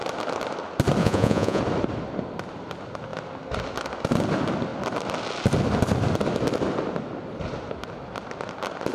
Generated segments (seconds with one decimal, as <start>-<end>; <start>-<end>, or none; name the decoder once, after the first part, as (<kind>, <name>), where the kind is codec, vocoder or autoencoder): 1.0-1.6 (vocoder, Vocos)

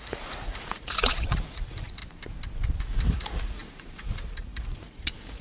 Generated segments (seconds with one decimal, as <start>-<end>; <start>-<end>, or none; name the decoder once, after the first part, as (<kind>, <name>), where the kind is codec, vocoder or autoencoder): 0.0-2.0 (vocoder, Vocos); 2.8-5.4

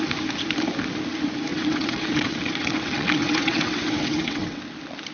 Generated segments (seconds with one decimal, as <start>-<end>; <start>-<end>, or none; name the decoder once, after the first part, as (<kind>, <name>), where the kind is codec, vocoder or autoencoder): 1.5-4.6 (vocoder, WaveNeXt)

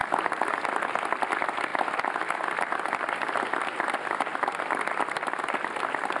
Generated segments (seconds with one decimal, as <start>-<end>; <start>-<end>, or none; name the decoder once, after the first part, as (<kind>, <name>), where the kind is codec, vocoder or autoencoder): none

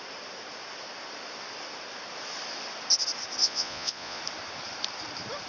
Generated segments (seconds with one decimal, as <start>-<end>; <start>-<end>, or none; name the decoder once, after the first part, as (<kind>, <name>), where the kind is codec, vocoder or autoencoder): 3.4-4.2 (vocoder, Vocos)

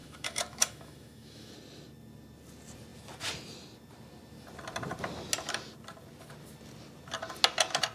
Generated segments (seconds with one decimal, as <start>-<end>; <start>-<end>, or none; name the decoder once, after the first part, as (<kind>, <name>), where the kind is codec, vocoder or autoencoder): 0.0-1.5 (autoencoder, DAC-VAE)

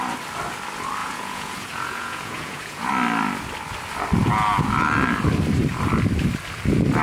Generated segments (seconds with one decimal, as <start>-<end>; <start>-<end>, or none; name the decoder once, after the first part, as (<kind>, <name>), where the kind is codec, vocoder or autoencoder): 1.0-2.9 (vocoder, Vocos)

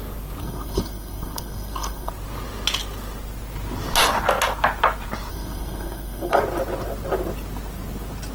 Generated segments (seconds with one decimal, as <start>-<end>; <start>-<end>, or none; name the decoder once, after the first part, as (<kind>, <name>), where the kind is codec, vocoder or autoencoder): 0.4-2.1 (codec, SNAC); 5.3-6.4